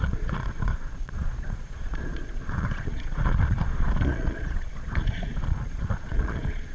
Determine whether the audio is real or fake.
fake